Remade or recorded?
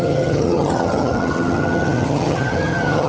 remade